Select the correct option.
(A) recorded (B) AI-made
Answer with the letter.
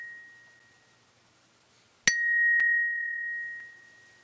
A